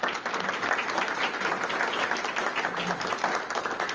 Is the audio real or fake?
real